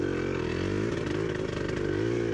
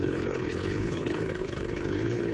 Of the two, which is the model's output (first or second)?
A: second